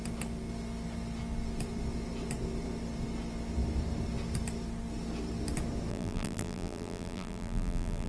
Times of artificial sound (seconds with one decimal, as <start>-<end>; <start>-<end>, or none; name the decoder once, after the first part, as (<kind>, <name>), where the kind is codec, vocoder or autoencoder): 5.9-8.1 (vocoder, BigVGAN v2)